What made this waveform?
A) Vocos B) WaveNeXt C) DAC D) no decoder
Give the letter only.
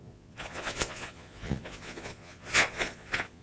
A